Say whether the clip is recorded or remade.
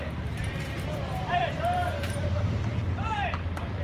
remade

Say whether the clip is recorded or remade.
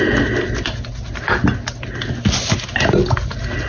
recorded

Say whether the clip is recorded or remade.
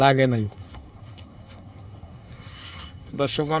remade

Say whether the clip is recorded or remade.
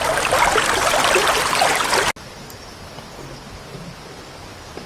recorded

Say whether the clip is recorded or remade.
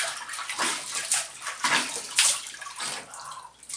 recorded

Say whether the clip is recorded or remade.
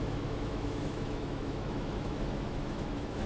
remade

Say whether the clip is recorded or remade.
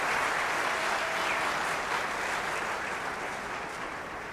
recorded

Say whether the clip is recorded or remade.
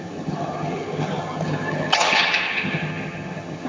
remade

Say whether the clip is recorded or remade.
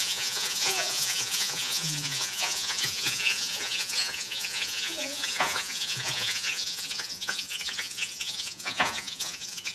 remade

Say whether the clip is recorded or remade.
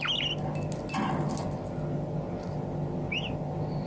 recorded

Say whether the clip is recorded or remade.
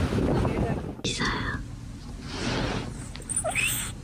recorded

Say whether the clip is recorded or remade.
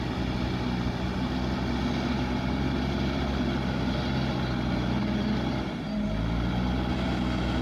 recorded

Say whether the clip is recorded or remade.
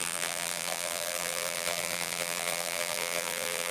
remade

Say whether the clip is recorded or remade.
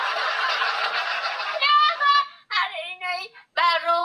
recorded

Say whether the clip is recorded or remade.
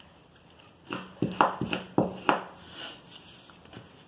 recorded